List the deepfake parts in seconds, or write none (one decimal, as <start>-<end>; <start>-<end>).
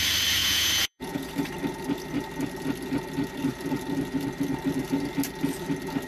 0.4-1.3